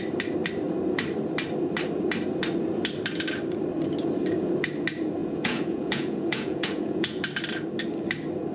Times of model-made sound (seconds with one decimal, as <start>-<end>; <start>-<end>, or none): 5.2-7.2